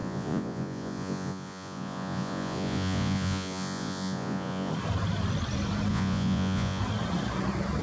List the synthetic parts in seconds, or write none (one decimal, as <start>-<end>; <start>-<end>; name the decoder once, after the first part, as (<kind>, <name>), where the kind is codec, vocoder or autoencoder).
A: 0.0-4.7 (vocoder, Vocos); 5.9-6.8